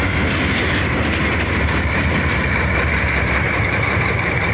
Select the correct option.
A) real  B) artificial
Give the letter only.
B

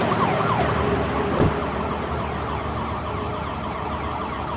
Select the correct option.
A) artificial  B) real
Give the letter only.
B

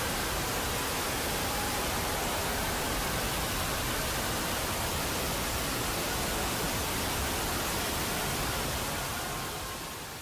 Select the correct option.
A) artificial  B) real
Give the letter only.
B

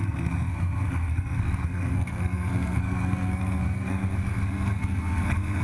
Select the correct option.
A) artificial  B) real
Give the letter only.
A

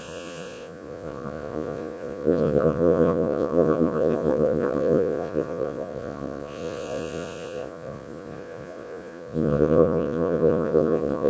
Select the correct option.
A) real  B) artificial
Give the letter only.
B